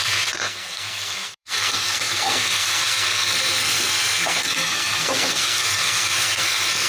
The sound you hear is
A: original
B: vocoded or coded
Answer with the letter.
B